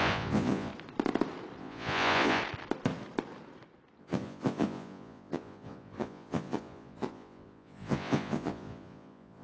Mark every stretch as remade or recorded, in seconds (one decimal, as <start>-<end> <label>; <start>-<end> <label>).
0.0-0.7 remade; 0.7-1.6 recorded; 1.6-2.4 remade; 2.4-4.0 recorded; 4.0-9.4 remade